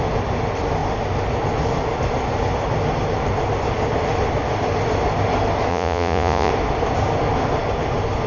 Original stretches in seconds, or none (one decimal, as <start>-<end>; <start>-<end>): 0.0-5.7; 6.5-8.3